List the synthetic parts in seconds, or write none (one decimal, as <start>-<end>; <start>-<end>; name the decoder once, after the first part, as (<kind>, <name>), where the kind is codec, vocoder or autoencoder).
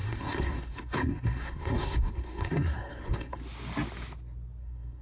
0.0-3.4 (codec, SNAC); 4.6-5.0